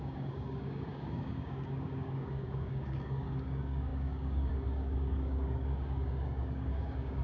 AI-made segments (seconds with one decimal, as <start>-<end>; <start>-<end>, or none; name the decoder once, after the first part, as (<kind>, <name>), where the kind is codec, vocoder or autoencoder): 0.0-7.2 (codec, DAC)